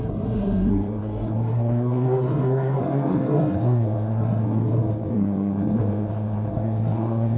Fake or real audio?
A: fake